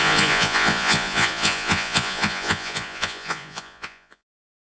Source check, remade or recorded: remade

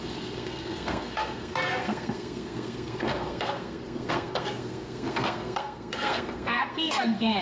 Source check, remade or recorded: remade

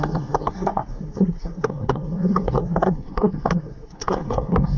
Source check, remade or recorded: remade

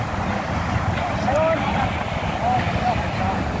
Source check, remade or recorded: recorded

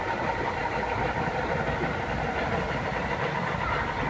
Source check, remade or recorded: recorded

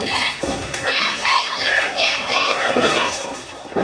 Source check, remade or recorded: remade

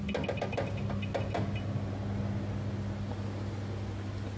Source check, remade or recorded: recorded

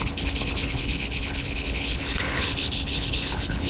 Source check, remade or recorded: remade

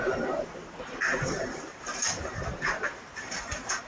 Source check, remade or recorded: recorded